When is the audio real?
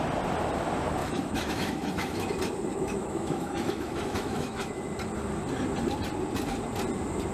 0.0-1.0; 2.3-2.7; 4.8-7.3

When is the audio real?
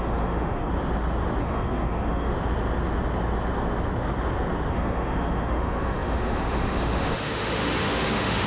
0.7-1.4; 2.3-4.7